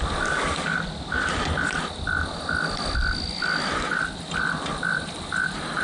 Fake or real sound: real